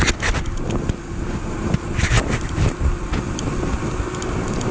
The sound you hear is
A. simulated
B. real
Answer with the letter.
B